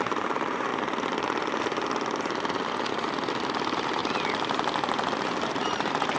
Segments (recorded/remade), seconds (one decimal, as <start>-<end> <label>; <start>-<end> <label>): 0.0-0.7 remade; 0.7-3.3 recorded; 3.3-4.0 remade; 4.0-5.1 recorded; 5.1-6.2 remade